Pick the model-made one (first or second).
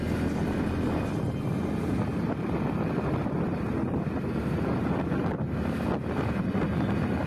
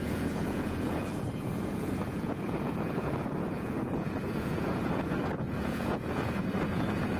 second